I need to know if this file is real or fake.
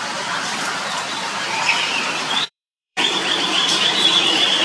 fake